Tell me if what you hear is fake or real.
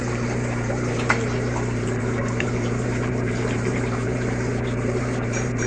fake